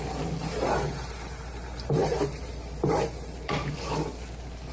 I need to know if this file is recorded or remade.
recorded